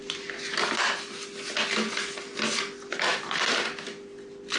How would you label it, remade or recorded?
recorded